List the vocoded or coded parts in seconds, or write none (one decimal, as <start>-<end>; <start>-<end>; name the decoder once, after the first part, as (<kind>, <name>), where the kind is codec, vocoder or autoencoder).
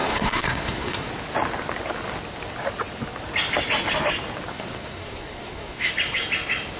0.0-1.1 (codec, SNAC); 4.5-5.9